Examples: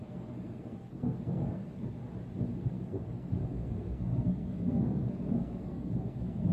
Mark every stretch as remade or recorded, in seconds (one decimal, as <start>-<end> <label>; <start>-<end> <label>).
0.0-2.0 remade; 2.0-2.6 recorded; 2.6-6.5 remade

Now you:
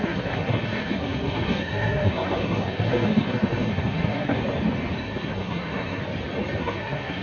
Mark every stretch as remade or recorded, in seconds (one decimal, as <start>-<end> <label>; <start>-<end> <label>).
0.0-4.4 remade; 4.4-5.0 recorded; 5.0-6.0 remade; 6.0-6.6 recorded; 6.6-7.2 remade

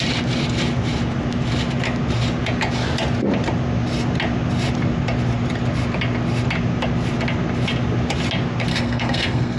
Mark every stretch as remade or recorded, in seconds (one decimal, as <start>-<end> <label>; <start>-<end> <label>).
0.0-8.7 recorded; 8.7-9.6 remade

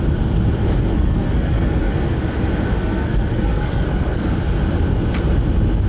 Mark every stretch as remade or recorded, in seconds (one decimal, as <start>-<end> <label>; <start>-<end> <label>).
0.0-0.9 recorded; 0.9-2.2 remade; 2.2-2.8 recorded; 2.8-4.3 remade; 4.3-5.9 recorded

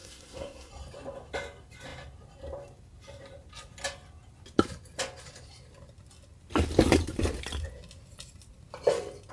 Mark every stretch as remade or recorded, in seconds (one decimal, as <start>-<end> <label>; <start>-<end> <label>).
0.0-0.7 remade; 0.7-9.3 recorded